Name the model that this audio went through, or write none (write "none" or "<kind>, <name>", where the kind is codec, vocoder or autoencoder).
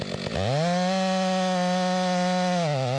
none